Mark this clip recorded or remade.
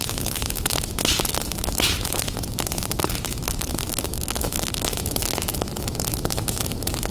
remade